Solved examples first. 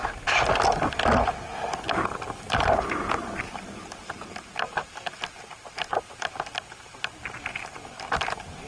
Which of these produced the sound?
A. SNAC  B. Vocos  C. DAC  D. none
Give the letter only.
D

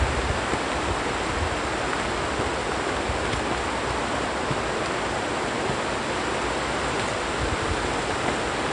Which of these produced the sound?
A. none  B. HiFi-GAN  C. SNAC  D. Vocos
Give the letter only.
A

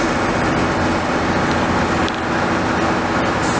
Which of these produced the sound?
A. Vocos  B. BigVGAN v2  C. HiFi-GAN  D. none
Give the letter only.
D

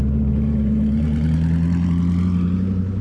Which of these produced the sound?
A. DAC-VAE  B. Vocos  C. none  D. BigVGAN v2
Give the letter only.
C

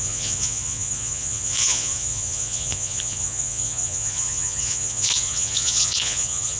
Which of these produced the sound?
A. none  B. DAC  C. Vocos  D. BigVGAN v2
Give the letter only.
C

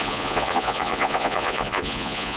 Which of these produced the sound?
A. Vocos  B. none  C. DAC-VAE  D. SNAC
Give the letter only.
A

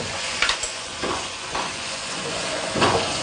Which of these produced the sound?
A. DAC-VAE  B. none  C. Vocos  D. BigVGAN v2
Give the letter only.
C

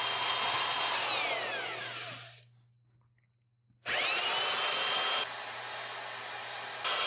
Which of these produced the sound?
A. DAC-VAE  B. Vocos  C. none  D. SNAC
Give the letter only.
C